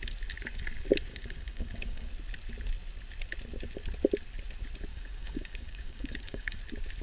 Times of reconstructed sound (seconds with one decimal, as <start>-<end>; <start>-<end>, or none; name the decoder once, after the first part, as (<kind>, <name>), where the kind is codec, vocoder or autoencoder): 1.1-2.1 (codec, DAC); 4.9-6.6